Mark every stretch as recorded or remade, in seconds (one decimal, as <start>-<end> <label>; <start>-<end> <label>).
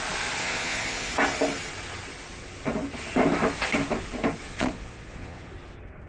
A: 0.0-0.4 recorded; 0.4-1.1 remade; 1.1-4.5 recorded; 4.5-5.5 remade; 5.5-6.1 recorded